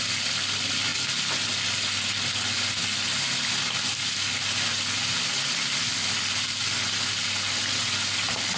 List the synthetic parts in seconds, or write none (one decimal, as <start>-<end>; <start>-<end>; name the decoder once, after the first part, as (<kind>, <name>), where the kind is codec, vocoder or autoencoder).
none